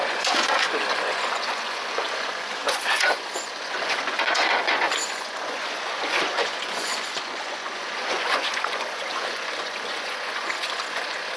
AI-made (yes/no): yes